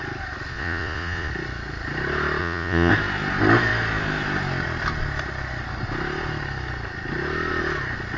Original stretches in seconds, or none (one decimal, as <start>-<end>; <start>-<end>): 0.0-0.5; 1.3-2.4; 2.9-8.2